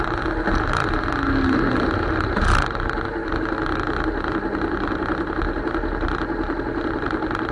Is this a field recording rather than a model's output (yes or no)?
yes